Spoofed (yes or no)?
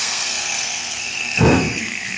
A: yes